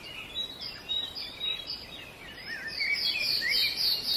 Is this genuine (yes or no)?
no